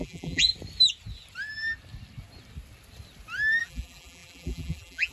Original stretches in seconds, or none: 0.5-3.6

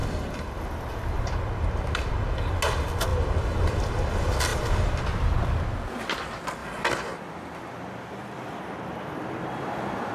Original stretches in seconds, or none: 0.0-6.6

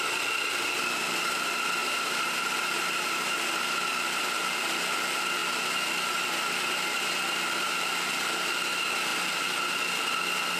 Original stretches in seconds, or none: 0.0-1.8; 3.4-10.6

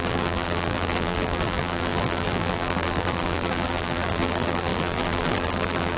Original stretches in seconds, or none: none

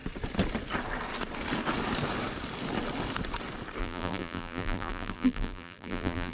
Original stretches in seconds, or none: 0.0-3.8

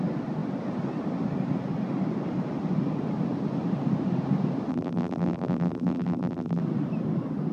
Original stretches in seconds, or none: 0.0-4.7; 6.6-7.5

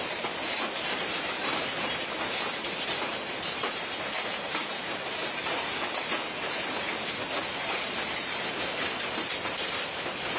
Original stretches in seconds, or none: 0.0-0.5; 3.7-4.6; 6.7-10.4